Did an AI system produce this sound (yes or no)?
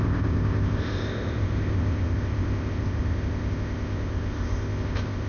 yes